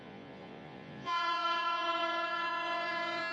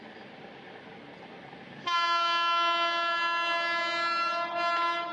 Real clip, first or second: second